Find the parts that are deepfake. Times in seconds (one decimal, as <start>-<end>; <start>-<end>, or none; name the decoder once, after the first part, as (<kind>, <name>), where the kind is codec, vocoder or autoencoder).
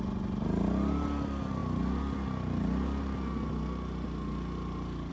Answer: none